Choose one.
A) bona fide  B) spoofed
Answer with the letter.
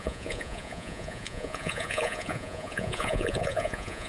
B